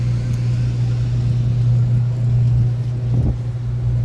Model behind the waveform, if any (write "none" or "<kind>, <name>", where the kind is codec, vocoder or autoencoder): none